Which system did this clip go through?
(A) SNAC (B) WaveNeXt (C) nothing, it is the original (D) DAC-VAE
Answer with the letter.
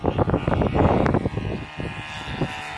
C